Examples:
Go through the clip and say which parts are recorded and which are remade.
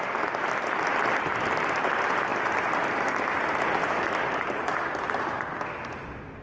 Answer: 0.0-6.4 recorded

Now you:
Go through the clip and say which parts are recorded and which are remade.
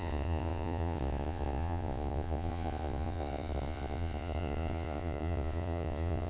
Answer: 0.0-6.3 remade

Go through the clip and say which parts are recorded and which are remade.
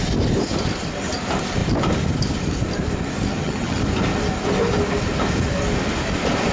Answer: 0.0-3.3 recorded; 3.3-3.8 remade; 3.8-6.5 recorded